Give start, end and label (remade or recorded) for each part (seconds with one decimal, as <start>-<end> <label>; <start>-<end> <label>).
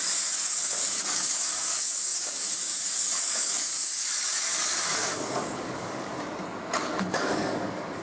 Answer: 0.0-6.1 remade; 6.1-6.7 recorded; 6.7-8.0 remade